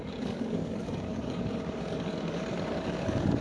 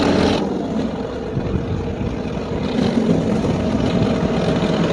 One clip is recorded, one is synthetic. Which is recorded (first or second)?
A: second